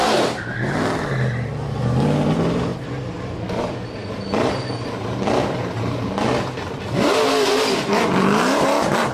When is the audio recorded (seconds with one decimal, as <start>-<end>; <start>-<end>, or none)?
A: 0.0-9.1